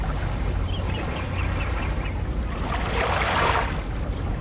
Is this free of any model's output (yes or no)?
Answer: yes